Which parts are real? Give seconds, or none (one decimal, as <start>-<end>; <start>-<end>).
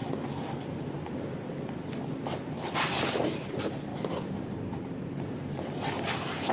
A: 0.0-3.0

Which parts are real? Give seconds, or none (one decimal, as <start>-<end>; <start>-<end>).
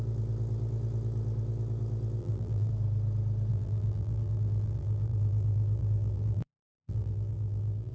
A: 0.0-2.2; 2.7-3.5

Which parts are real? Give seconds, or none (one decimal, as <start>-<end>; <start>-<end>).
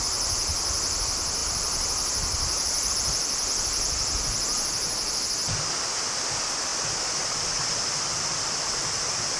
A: 0.0-1.4; 2.9-9.4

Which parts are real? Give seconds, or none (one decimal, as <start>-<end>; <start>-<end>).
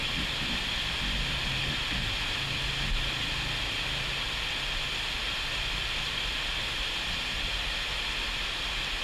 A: 1.5-9.0